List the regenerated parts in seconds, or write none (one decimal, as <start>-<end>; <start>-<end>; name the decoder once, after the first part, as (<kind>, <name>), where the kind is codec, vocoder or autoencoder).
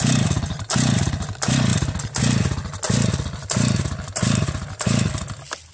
none